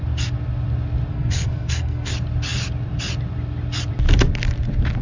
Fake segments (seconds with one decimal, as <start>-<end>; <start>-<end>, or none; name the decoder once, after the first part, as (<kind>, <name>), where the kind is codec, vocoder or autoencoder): 1.1-2.1 (codec, SNAC)